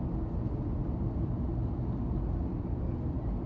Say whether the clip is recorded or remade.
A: recorded